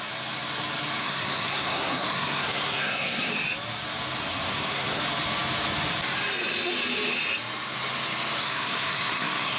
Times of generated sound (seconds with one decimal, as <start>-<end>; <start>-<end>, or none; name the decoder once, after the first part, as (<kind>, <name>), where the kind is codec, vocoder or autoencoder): 1.0-3.3 (codec, SNAC); 4.2-5.0; 8.4-9.6